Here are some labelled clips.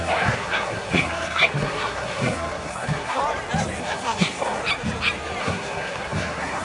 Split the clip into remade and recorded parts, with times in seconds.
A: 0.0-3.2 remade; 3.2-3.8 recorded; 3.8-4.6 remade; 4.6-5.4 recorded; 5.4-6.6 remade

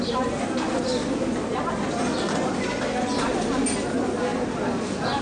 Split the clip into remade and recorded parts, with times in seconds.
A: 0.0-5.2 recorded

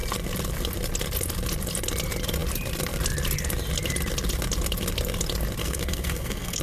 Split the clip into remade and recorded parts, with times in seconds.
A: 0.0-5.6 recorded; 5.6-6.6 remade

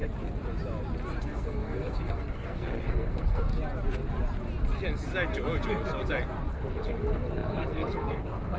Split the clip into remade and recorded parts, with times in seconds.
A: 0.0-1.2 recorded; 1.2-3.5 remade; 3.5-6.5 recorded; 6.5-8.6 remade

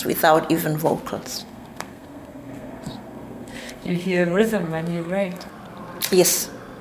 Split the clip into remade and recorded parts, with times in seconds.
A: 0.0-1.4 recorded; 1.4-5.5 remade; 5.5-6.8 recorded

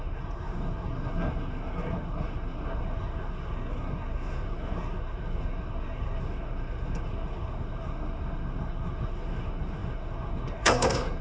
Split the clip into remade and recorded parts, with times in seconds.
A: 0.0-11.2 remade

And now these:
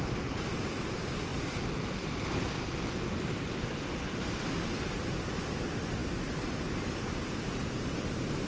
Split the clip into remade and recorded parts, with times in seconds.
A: 0.0-8.5 recorded